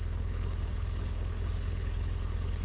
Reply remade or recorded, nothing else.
remade